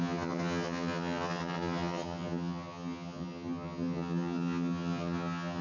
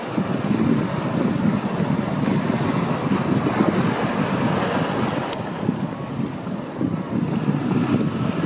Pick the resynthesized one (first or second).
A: first